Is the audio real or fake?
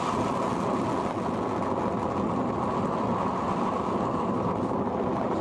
real